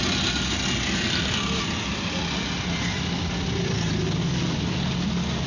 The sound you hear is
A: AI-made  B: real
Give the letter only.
B